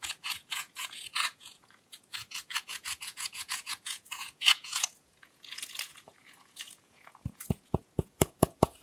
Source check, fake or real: fake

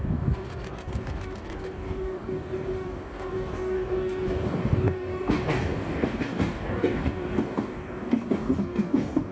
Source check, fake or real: fake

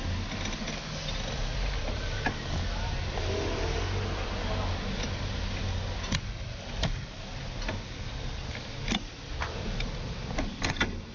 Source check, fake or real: real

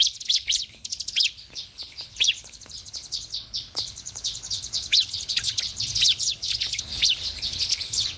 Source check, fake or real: fake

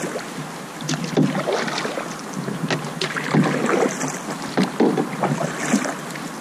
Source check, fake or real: real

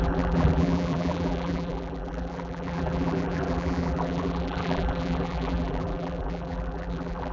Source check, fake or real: fake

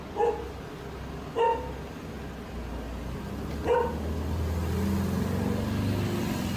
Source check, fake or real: real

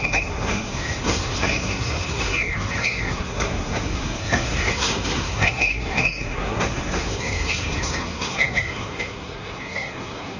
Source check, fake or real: fake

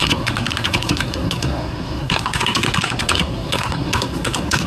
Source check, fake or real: fake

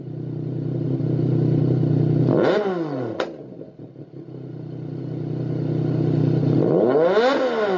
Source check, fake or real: real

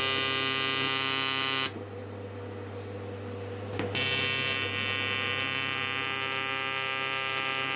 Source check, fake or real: real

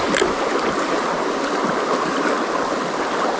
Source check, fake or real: real